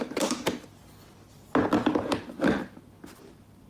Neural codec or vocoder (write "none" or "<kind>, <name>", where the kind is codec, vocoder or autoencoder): none